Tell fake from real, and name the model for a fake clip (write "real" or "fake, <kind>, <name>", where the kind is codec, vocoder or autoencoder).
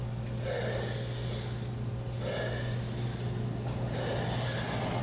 real